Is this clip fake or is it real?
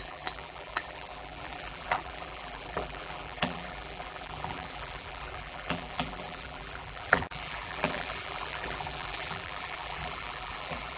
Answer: fake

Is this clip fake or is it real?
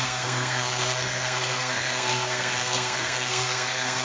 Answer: fake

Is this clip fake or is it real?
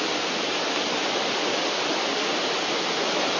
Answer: fake